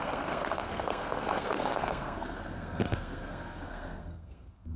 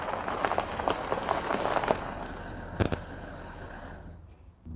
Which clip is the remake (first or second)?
first